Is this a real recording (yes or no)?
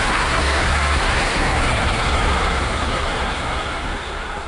no